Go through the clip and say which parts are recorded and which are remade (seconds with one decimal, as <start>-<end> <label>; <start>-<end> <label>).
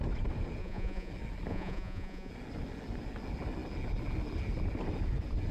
0.0-0.6 recorded; 0.6-1.1 remade; 1.1-1.5 recorded; 1.5-2.3 remade; 2.3-5.5 recorded